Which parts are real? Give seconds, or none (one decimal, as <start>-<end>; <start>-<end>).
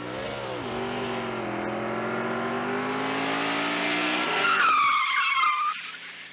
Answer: 0.0-3.8; 4.6-6.3